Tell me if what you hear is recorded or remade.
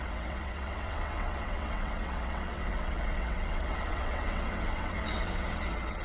remade